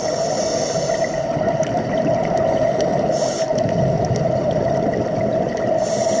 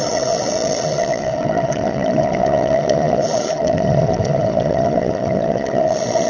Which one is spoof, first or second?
second